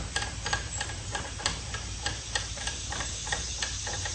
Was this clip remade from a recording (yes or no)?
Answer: yes